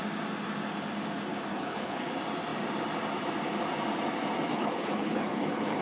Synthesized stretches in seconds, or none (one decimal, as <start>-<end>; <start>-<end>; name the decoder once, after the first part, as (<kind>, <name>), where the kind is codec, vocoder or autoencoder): 1.5-2.1 (codec, HILCodec); 4.5-5.8